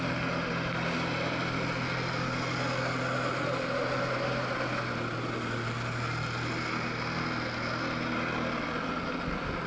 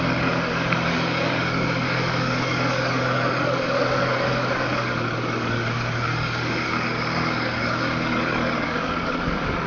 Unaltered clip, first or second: first